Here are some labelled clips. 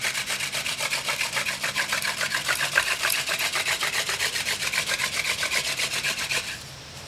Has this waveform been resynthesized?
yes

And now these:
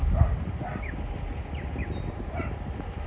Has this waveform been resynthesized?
no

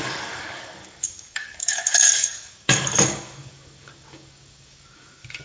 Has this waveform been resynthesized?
yes